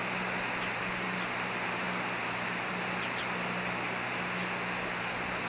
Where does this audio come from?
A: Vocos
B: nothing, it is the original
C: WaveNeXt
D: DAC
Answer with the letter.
B